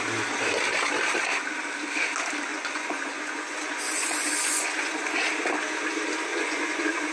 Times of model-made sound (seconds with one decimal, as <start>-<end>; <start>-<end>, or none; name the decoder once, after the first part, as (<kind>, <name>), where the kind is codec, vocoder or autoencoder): 2.5-5.2 (vocoder, Vocos); 6.3-7.1